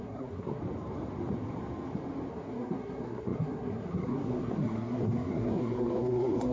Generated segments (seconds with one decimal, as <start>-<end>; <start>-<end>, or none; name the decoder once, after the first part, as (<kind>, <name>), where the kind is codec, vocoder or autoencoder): 0.0-0.6 (codec, SNAC); 2.3-6.5